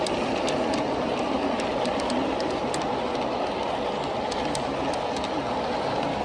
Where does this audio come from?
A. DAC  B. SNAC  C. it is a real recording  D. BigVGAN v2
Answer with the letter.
C